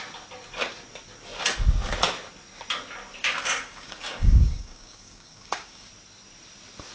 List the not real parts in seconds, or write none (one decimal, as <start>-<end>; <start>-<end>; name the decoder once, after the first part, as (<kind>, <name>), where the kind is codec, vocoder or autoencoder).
3.2-5.9 (codec, DAC)